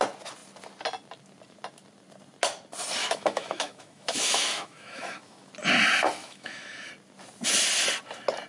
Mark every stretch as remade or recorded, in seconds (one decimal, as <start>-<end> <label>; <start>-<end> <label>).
0.0-3.0 recorded; 3.0-5.5 remade; 5.5-6.2 recorded; 6.2-6.9 remade; 6.9-8.5 recorded